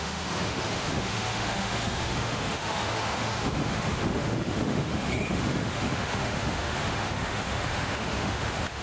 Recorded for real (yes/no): no